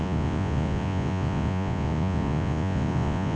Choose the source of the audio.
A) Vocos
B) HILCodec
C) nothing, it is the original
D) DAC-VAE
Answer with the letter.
A